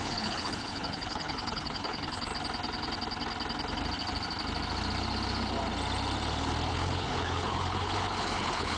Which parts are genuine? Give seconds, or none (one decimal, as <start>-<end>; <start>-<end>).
2.3-6.7